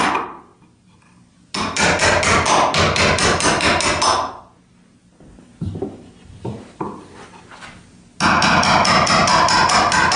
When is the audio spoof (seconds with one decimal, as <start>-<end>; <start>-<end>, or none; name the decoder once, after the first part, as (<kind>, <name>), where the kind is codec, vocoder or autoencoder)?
none